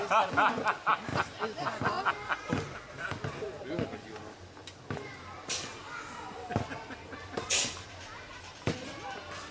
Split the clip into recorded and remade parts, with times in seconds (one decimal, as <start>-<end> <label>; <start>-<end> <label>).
0.0-9.5 recorded